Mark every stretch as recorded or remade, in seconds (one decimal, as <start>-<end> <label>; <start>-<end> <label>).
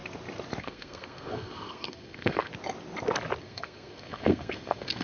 0.0-0.6 recorded; 0.6-2.5 remade; 2.5-3.4 recorded; 3.4-5.0 remade